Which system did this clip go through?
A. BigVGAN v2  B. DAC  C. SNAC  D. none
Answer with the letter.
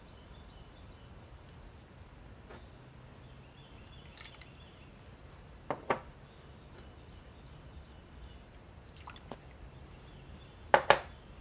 D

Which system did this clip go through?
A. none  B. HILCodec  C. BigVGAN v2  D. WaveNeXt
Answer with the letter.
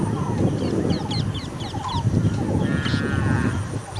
A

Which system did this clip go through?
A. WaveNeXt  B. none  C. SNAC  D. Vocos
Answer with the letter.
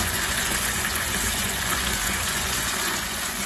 D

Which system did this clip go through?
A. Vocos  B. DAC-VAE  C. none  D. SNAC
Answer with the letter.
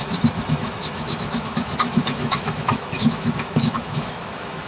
B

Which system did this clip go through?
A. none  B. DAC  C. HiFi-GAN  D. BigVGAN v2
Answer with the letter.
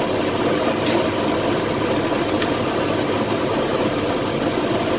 A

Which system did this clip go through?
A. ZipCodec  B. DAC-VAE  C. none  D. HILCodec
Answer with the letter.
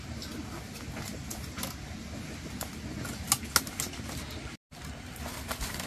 C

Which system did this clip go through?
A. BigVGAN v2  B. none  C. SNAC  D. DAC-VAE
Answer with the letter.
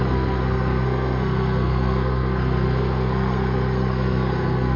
C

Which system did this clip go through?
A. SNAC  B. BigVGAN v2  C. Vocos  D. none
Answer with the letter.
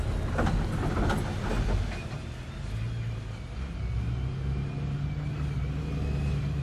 D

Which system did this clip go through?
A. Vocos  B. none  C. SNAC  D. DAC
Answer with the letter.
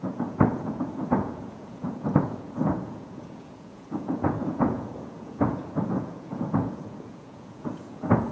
A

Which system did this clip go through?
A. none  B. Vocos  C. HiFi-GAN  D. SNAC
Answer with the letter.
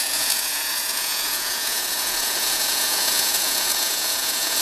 B